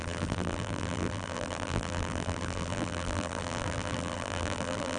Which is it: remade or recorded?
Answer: remade